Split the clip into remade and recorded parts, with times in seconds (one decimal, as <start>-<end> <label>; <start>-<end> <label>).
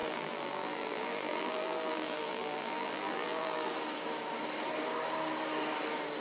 0.0-3.7 remade; 3.7-6.2 recorded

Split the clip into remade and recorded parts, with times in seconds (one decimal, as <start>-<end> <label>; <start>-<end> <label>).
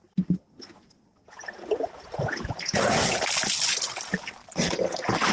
0.0-0.5 recorded; 0.5-3.0 remade; 3.0-5.3 recorded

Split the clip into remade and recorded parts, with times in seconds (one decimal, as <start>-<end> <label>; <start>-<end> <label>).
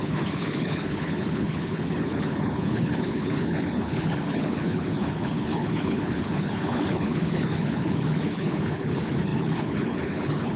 0.0-10.6 remade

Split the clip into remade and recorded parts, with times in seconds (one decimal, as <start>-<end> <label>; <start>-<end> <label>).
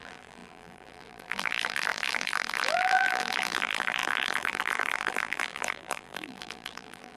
0.0-7.2 remade